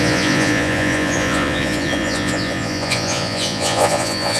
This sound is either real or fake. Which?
fake